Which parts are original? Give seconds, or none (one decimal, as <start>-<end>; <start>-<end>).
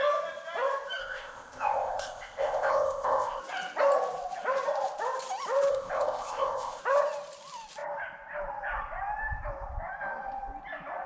0.0-1.0; 3.4-5.7; 6.8-11.1